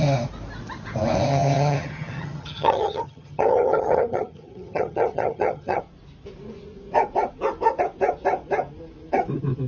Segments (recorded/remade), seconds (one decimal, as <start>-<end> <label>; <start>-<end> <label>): 0.0-1.3 recorded; 1.3-5.8 remade; 5.8-9.7 recorded